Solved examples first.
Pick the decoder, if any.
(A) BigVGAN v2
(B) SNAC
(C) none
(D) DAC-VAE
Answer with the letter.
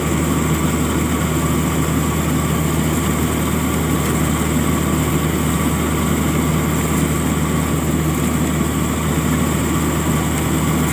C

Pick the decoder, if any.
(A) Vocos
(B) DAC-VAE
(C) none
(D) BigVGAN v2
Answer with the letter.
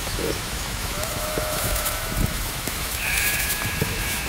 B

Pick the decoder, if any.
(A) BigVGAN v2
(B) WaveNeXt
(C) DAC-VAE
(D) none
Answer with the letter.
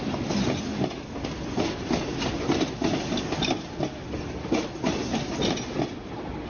D